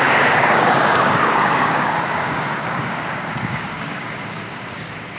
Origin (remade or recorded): remade